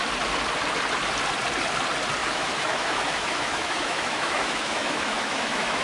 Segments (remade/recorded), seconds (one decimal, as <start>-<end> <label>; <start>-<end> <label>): 0.0-2.2 recorded; 2.2-5.8 remade